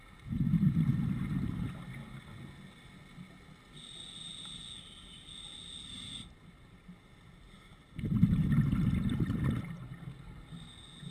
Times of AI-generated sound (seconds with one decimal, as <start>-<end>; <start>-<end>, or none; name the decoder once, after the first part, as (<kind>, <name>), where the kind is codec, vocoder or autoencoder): none